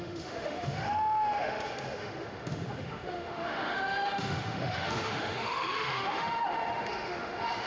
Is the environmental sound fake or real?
fake